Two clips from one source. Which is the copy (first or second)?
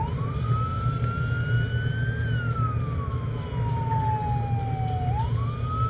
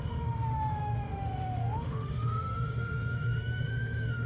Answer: second